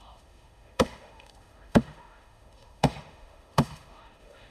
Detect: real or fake fake